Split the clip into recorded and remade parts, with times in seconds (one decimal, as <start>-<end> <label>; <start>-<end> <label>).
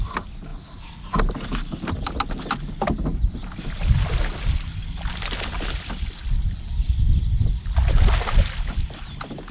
0.0-9.5 recorded